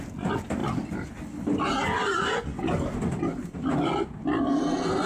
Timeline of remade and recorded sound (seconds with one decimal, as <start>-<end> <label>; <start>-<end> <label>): 0.0-5.1 recorded